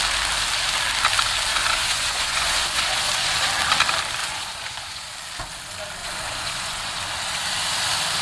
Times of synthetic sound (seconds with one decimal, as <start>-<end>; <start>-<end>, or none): 1.5-3.5; 4.2-5.1; 6.0-6.9